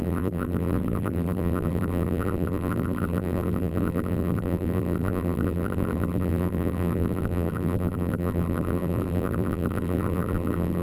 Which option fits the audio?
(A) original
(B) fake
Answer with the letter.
B